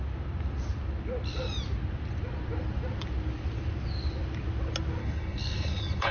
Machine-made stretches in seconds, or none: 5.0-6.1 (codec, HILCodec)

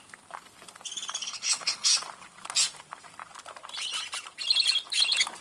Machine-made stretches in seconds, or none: 1.2-1.9 (codec, HILCodec)